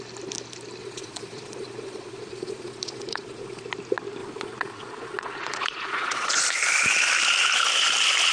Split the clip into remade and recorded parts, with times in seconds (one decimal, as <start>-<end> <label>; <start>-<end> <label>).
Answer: 0.0-0.8 recorded; 0.8-3.6 remade; 3.6-4.2 recorded; 4.2-6.3 remade; 6.3-8.3 recorded